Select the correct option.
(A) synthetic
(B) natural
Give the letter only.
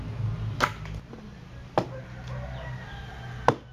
B